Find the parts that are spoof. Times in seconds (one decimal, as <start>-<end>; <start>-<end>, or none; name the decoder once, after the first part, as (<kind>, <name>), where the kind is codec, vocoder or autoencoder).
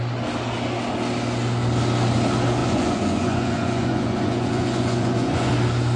2.6-5.5 (vocoder, Vocos)